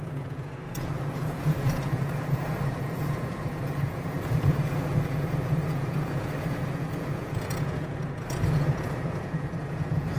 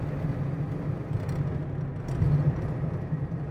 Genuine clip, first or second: second